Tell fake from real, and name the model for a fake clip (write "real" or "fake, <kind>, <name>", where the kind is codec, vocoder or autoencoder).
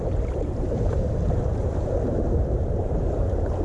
fake, vocoder, BigVGAN v2